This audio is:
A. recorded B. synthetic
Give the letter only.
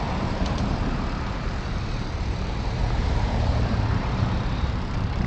B